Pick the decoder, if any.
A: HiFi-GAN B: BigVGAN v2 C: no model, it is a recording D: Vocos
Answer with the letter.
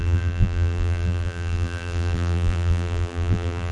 B